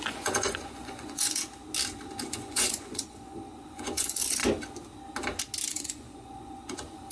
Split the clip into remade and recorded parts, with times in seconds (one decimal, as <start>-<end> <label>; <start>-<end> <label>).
0.0-1.4 remade; 1.4-2.3 recorded; 2.3-4.4 remade; 4.4-5.7 recorded; 5.7-7.1 remade